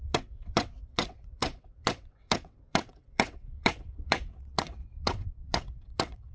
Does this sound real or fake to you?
fake